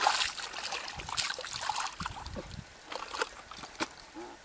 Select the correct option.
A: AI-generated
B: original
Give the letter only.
B